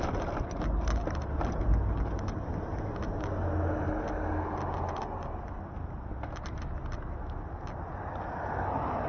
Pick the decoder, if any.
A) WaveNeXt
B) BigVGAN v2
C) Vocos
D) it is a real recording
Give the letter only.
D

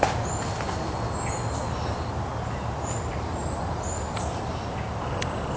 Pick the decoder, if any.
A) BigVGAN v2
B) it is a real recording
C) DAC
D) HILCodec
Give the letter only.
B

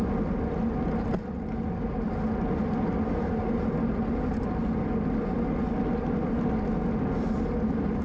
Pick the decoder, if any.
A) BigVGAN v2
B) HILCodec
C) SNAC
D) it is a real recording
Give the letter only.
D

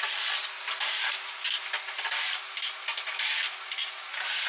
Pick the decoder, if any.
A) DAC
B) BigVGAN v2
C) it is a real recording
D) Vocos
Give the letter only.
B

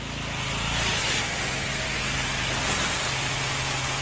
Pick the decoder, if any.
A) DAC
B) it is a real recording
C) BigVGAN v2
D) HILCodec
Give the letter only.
B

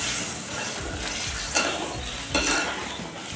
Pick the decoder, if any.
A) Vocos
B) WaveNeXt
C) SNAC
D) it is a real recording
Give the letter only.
D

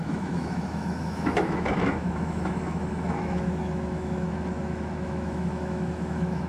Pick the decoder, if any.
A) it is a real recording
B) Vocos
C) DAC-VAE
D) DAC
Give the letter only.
C